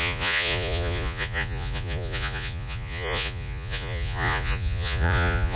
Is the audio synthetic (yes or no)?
yes